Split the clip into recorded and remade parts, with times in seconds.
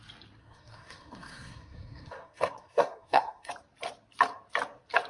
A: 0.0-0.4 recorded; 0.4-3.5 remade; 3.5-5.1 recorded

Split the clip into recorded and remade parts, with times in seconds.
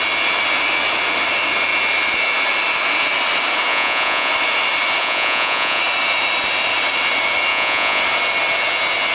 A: 0.0-3.7 recorded; 3.7-4.3 remade; 4.3-5.0 recorded; 5.0-5.8 remade; 5.8-7.5 recorded; 7.5-8.0 remade; 8.0-9.1 recorded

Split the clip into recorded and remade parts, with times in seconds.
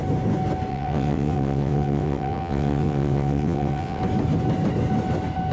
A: 0.0-0.7 recorded; 0.7-4.0 remade; 4.0-5.5 recorded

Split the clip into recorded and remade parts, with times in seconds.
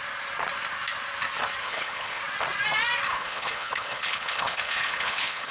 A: 0.0-1.6 recorded; 1.6-2.2 remade; 2.2-3.1 recorded; 3.1-5.5 remade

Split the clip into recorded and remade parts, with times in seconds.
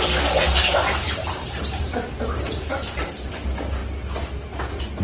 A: 0.0-1.0 recorded; 1.0-3.3 remade; 3.3-5.0 recorded